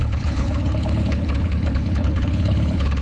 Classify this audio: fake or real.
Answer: fake